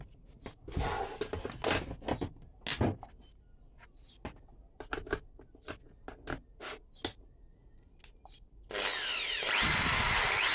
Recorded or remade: recorded